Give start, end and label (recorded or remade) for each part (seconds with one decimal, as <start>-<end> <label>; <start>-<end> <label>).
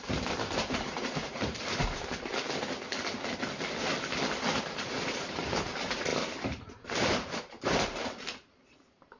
0.0-2.3 remade; 2.3-4.5 recorded; 4.5-9.2 remade